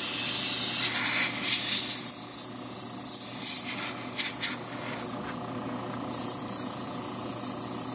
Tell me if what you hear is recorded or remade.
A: recorded